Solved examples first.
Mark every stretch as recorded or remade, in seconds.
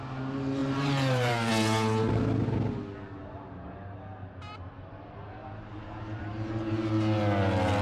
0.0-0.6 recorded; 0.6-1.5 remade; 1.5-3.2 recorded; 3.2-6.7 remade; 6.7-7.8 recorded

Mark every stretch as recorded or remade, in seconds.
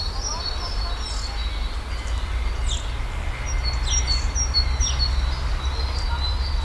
0.0-6.6 recorded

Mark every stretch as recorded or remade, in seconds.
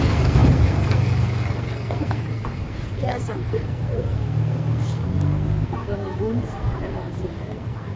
0.0-8.0 remade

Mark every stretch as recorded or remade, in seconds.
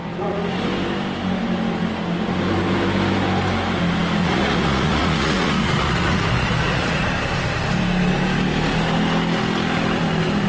0.0-4.2 recorded; 4.2-7.1 remade; 7.1-10.5 recorded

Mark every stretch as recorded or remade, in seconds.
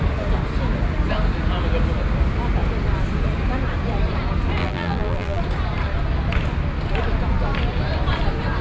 0.0-4.6 recorded; 4.6-5.4 remade; 5.4-8.6 recorded